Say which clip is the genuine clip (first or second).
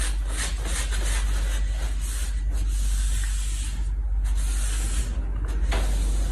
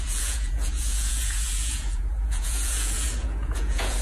first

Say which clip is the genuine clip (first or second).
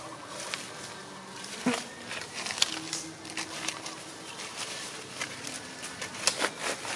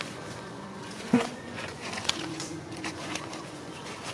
first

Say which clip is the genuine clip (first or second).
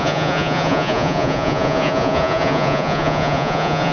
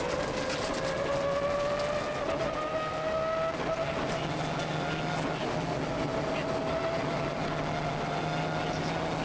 second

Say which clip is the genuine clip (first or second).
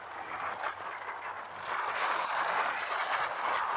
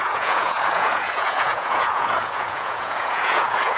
first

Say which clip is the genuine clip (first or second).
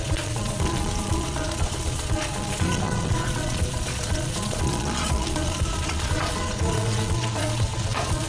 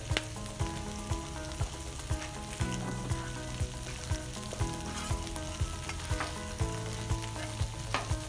second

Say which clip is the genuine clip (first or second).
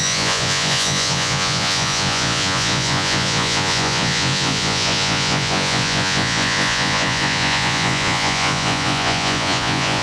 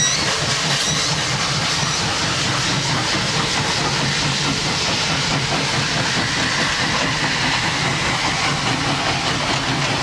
second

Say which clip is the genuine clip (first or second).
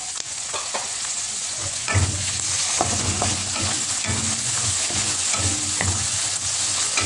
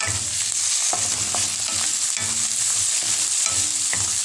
second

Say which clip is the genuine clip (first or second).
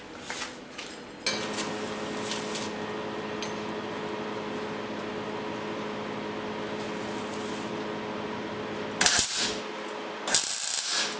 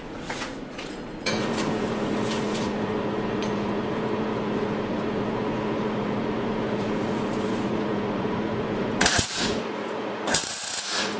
first